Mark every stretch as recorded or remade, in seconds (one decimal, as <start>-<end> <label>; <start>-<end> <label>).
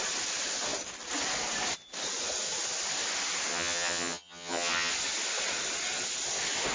0.0-3.5 recorded; 3.5-4.9 remade; 4.9-6.7 recorded